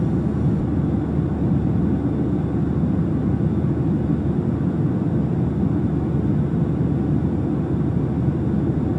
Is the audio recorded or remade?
recorded